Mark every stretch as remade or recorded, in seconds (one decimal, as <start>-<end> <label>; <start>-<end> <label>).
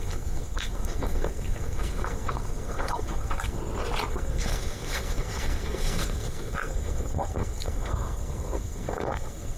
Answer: 0.0-3.6 remade; 3.6-4.1 recorded; 4.1-9.6 remade